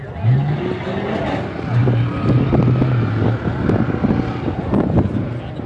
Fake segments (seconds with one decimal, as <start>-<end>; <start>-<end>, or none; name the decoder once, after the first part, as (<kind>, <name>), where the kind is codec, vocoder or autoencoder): none